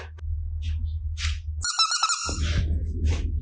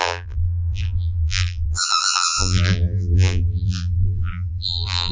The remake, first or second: second